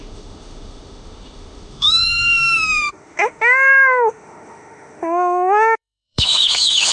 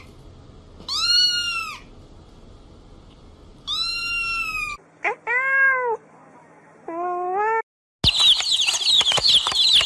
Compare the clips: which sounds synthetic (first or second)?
first